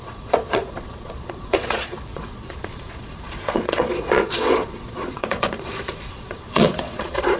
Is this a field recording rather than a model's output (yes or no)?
no